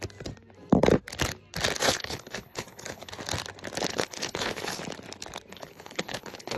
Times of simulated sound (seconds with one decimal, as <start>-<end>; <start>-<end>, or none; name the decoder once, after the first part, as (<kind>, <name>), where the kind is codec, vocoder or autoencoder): 1.8-3.1 (codec, HILCodec); 3.9-4.8; 5.5-6.6